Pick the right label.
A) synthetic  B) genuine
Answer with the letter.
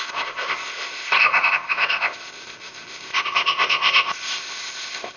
A